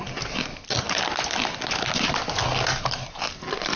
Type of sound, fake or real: real